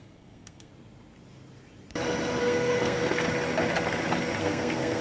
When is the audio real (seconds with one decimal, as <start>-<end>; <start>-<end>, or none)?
0.7-2.4; 3.0-4.4